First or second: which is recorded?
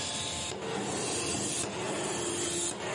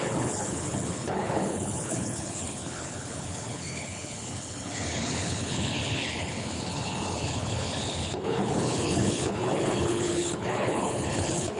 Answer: first